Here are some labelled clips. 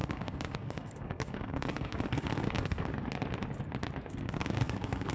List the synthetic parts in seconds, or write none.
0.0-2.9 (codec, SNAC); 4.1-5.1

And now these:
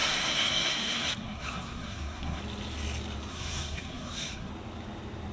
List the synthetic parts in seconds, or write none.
0.0-2.4 (codec, SNAC); 3.3-4.5

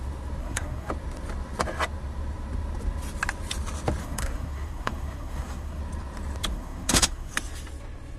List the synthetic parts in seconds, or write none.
0.4-0.9 (codec, SNAC); 4.0-5.8; 6.5-7.3

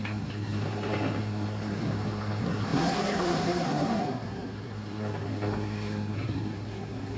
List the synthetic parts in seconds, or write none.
0.0-7.2 (codec, SNAC)

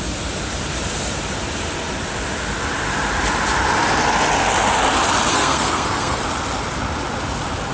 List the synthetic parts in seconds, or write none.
5.3-6.2 (codec, SNAC)

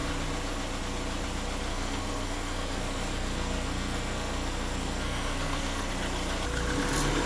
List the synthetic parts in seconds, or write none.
1.7-5.9 (codec, SNAC)

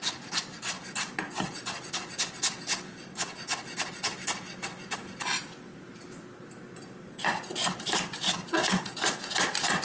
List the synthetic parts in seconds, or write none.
none

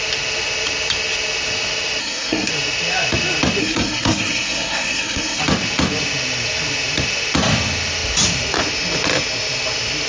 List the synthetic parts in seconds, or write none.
2.0-2.5 (codec, SNAC); 3.6-5.4